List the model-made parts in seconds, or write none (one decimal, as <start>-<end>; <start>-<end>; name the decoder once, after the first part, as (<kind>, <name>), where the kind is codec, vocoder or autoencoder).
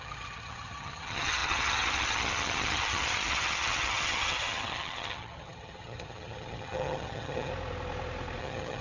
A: 0.0-7.5 (vocoder, HiFi-GAN); 8.4-8.8